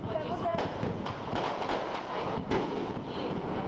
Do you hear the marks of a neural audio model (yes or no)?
yes